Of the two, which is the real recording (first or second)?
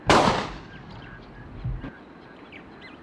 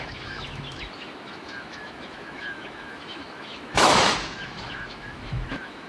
first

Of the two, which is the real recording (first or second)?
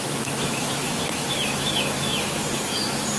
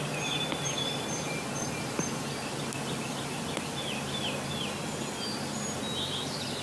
second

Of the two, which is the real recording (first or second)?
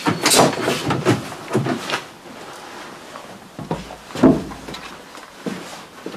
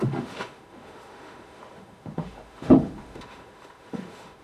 first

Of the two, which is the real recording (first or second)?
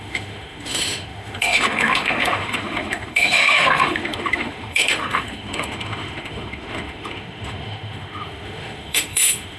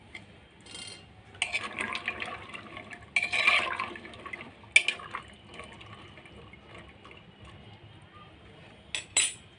second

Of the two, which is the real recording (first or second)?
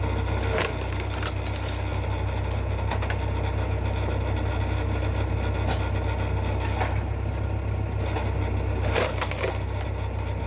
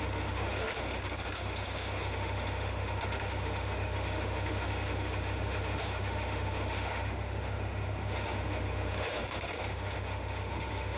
first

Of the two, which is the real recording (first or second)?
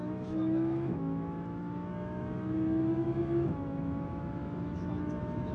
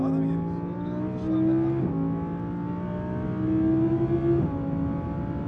second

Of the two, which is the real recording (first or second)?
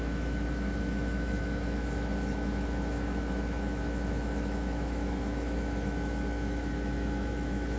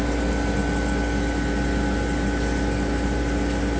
second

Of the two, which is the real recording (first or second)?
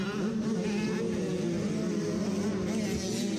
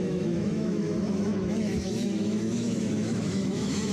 first